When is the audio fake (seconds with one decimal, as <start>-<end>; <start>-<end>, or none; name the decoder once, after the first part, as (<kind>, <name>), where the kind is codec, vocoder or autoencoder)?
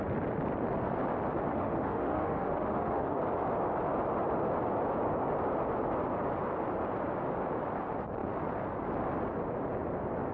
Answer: 1.5-3.2 (autoencoder, DAC-VAE)